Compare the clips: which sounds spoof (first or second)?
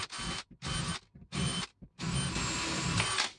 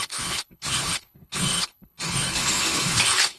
second